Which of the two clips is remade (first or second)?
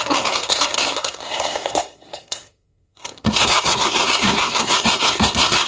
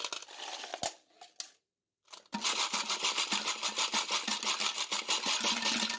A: first